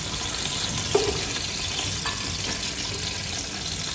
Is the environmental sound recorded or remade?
recorded